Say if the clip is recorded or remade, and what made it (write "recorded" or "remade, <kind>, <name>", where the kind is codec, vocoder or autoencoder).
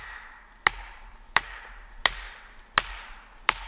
recorded